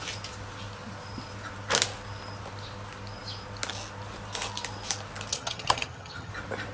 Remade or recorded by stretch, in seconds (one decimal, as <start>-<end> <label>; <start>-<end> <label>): 0.0-5.3 recorded; 5.3-6.3 remade; 6.3-6.7 recorded